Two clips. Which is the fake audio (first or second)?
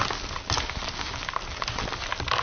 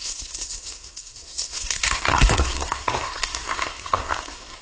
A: second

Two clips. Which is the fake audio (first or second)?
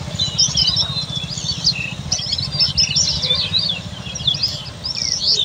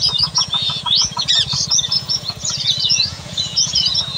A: second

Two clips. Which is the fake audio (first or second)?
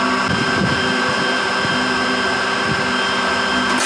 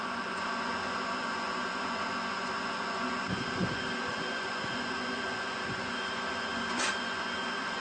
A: second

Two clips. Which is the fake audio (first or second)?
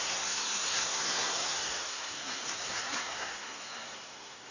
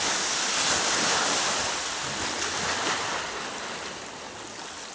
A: first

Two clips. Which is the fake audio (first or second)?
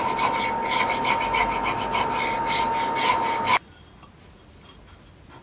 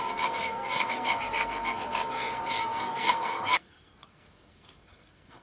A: second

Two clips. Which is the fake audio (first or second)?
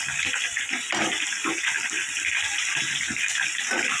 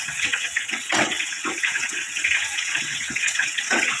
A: second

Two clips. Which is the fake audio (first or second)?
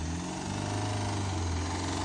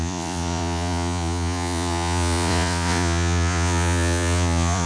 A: second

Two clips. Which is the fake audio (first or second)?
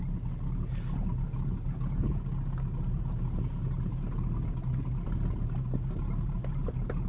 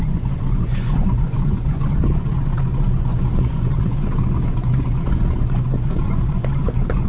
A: second